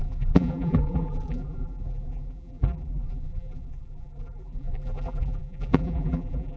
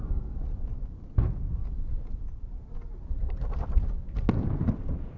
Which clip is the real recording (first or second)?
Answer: second